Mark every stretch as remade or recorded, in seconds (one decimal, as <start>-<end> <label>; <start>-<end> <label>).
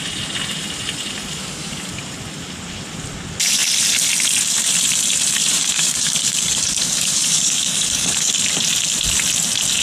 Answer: 0.0-1.4 recorded; 1.4-1.9 remade; 1.9-5.4 recorded; 5.4-8.3 remade; 8.3-9.8 recorded